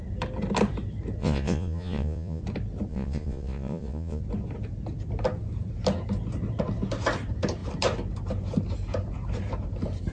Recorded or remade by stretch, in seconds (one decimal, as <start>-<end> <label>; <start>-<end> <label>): 0.0-1.2 recorded; 1.2-2.4 remade; 2.4-2.9 recorded; 2.9-4.2 remade; 4.2-10.1 recorded